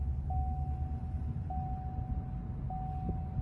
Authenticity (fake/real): real